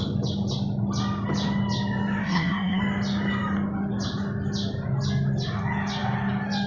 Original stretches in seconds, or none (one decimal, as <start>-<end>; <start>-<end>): 0.0-2.2; 2.8-6.7